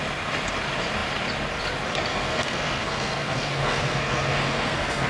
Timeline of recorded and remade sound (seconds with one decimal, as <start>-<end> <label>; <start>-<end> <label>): 0.0-2.1 recorded; 2.1-5.1 remade